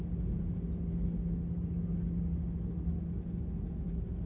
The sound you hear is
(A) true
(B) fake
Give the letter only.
A